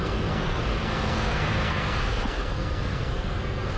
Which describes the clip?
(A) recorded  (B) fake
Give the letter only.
B